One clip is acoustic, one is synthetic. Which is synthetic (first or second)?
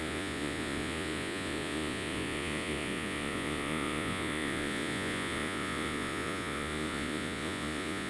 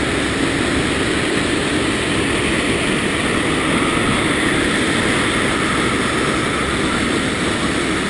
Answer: first